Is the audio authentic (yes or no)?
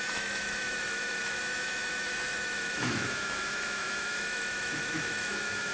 no